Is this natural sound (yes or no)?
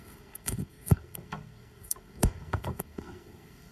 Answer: no